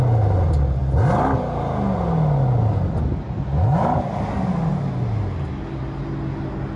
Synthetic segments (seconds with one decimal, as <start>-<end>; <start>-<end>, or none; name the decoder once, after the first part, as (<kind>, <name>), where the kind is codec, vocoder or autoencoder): none

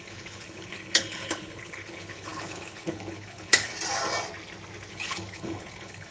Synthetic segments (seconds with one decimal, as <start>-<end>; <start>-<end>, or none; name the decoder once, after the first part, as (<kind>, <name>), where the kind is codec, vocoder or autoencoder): 0.0-3.7 (codec, HILCodec); 4.9-6.1

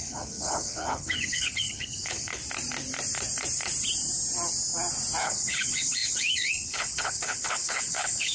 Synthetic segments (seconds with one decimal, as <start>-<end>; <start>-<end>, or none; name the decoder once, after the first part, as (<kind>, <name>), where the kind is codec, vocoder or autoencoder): 0.0-2.4 (codec, HILCodec); 5.2-8.3

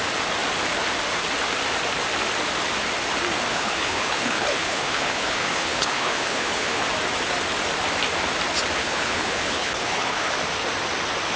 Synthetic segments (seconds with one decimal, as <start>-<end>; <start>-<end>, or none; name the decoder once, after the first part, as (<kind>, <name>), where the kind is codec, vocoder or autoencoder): 3.5-6.8 (codec, HILCodec); 8.8-10.3

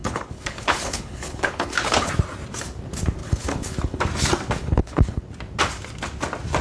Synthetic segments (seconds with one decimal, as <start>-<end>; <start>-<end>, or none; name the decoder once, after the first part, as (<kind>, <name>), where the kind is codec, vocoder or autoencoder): 0.0-2.1 (codec, HILCodec); 3.2-4.0; 4.6-5.2